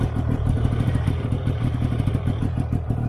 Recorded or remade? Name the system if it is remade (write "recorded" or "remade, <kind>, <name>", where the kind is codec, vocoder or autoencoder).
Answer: remade, vocoder, BigVGAN v2